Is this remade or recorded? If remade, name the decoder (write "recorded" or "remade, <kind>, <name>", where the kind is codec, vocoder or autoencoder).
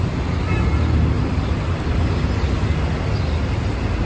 recorded